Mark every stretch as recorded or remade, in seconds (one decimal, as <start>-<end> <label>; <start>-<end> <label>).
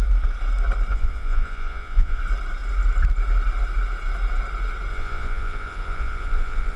0.0-0.9 recorded; 0.9-2.2 remade; 2.2-4.9 recorded; 4.9-6.8 remade